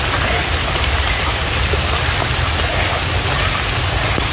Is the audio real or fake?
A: real